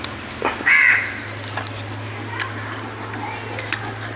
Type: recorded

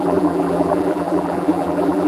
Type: remade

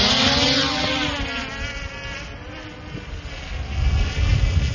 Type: recorded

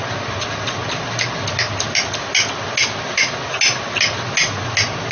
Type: recorded